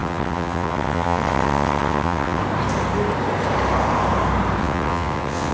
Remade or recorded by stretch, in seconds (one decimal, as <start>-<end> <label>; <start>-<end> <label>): 0.0-2.4 remade; 2.4-4.6 recorded; 4.6-5.5 remade